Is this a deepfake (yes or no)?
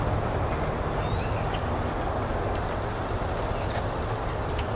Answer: no